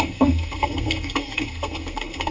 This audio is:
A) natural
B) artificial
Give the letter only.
B